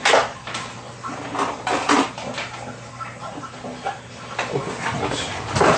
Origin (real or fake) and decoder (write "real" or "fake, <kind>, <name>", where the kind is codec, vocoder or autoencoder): real